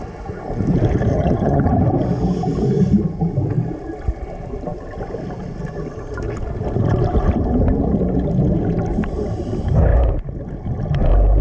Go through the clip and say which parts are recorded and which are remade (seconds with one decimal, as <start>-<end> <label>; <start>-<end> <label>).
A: 0.0-1.1 recorded; 1.1-1.7 remade; 1.7-11.4 recorded